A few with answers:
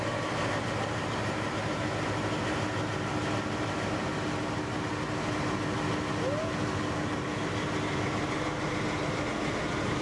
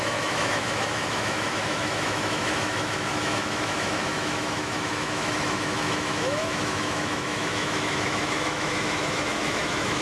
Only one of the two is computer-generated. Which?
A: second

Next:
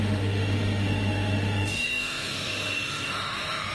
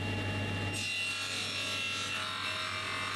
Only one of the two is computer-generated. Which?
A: first